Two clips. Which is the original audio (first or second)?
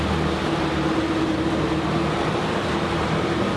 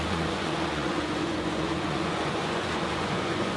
first